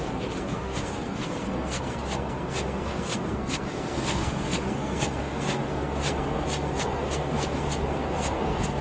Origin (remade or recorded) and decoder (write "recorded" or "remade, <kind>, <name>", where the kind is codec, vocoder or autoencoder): remade, codec, SNAC